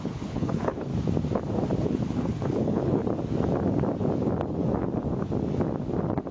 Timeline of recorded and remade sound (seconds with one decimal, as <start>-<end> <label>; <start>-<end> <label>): 0.0-0.9 remade; 0.9-1.8 recorded; 1.8-3.0 remade; 3.0-6.3 recorded